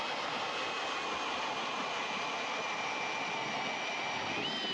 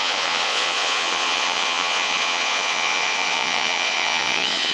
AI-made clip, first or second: second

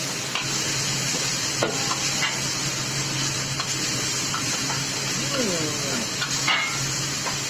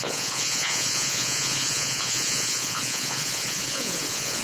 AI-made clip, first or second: second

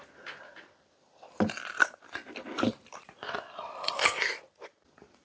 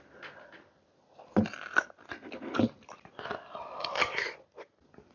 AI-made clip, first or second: first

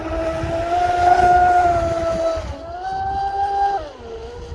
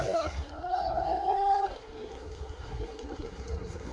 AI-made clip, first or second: second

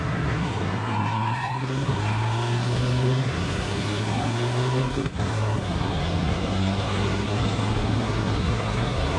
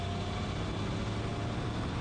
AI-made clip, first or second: first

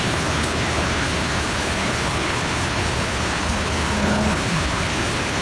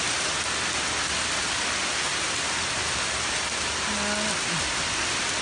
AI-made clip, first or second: first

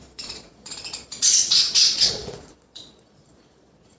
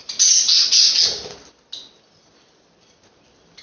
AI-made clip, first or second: first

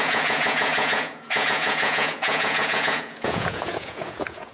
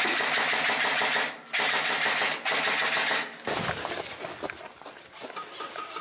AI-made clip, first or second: first